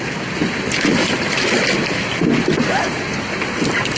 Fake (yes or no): no